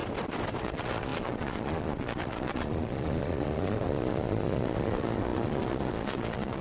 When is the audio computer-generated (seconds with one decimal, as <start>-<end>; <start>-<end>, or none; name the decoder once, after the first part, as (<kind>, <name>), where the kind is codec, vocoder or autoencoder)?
0.6-6.6 (vocoder, Vocos)